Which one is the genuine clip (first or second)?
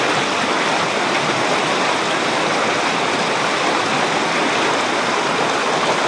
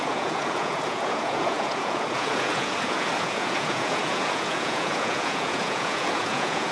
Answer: first